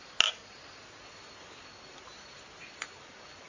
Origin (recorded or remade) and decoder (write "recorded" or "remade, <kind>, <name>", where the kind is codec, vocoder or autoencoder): recorded